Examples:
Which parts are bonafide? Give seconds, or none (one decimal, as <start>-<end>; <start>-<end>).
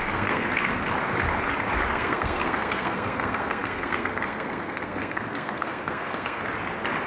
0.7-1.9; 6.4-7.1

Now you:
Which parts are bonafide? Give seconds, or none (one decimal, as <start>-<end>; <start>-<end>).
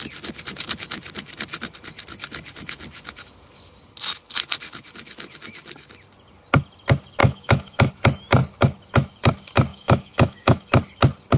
0.0-7.2; 7.9-9.7; 10.7-11.4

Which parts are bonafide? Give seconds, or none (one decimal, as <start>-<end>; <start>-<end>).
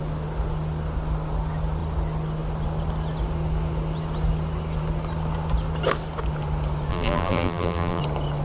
0.0-6.9; 8.0-8.4